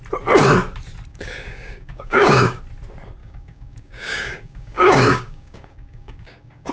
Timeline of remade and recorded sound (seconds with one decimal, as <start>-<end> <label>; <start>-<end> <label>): 0.0-1.1 recorded; 1.1-2.6 remade; 2.6-3.2 recorded; 3.2-6.7 remade